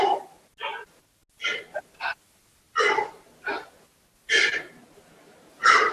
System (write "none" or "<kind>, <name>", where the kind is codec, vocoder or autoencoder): none